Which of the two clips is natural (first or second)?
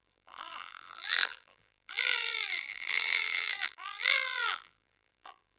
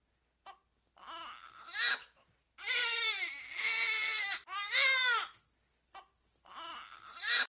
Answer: second